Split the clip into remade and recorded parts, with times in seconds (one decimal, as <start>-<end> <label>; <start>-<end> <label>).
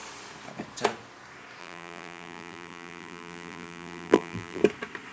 0.0-1.6 recorded; 1.6-4.6 remade; 4.6-5.1 recorded